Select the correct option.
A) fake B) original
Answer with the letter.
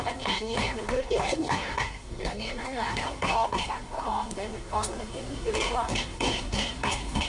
A